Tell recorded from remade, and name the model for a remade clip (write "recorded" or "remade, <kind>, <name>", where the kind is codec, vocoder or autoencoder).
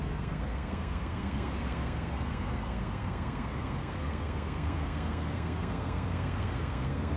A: remade, codec, SNAC